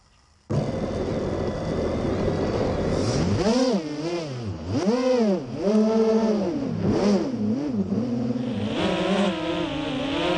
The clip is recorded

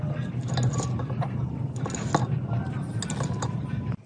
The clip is recorded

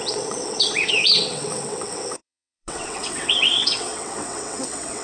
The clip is remade